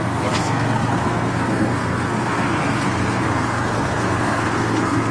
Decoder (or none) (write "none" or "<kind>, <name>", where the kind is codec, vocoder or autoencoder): codec, SNAC